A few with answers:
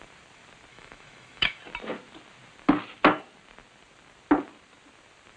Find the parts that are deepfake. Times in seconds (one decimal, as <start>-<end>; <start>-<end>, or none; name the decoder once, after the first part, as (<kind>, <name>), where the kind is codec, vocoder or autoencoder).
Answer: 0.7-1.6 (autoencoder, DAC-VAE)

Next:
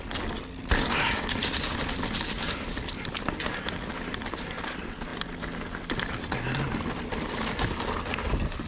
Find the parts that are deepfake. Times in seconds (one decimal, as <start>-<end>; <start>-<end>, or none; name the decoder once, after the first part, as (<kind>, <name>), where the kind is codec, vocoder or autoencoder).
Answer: none

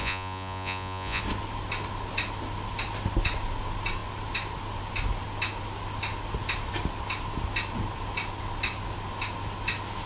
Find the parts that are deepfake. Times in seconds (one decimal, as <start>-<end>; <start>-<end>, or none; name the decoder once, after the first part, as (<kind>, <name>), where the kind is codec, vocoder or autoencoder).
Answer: 0.0-1.2 (vocoder, Vocos)

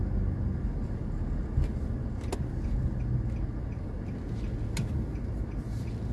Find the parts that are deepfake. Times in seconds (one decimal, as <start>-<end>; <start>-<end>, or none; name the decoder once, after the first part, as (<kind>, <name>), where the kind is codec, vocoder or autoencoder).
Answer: none

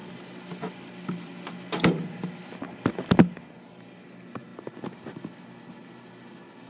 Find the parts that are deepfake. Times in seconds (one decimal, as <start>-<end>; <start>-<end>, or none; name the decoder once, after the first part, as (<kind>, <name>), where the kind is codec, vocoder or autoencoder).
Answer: none

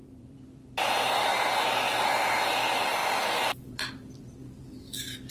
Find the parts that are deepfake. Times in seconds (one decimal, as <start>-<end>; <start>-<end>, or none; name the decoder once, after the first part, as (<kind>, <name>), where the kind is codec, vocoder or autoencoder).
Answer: 0.0-1.3 (vocoder, BigVGAN v2); 2.0-5.3

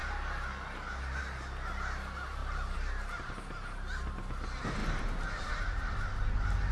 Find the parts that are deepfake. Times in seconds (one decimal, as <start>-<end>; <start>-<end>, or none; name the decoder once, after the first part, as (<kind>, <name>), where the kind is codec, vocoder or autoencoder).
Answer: 2.4-3.3 (vocoder, BigVGAN v2); 4.8-5.5

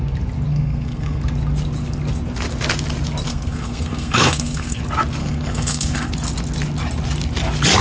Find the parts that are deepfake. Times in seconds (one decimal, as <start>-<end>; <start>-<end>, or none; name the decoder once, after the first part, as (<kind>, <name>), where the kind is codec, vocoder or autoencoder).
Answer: 0.5-1.2 (codec, SNAC); 3.3-4.8; 5.2-6.1